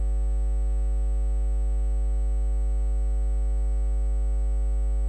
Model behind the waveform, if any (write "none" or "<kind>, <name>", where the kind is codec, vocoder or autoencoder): none